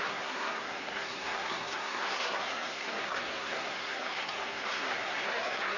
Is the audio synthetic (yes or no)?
yes